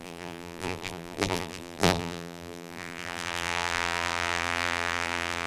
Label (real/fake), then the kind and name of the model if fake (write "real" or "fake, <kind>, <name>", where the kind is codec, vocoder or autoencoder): fake, vocoder, BigVGAN v2